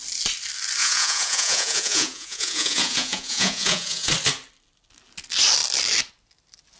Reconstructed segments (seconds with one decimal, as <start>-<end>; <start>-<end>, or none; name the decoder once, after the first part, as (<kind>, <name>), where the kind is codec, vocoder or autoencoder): 0.8-4.1 (vocoder, Vocos)

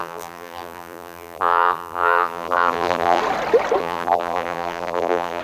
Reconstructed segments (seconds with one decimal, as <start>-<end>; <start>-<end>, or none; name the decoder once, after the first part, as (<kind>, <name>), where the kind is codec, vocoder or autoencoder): 0.0-3.2 (vocoder, BigVGAN v2); 3.8-5.4

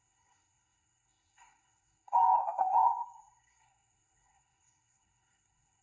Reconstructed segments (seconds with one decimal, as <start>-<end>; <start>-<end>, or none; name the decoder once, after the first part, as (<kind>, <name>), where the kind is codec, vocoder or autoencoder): 0.0-5.8 (codec, SNAC)

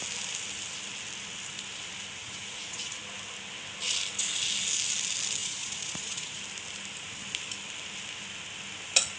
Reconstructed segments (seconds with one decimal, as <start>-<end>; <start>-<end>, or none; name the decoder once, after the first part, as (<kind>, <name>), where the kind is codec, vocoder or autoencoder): 2.2-3.0 (vocoder, Vocos); 5.4-6.4